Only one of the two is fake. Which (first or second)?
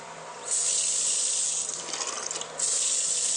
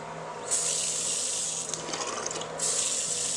first